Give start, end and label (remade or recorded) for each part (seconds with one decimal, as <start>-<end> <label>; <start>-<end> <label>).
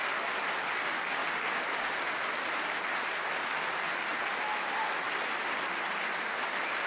0.0-6.9 recorded